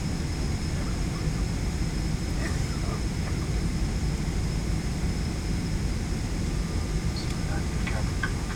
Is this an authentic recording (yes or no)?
yes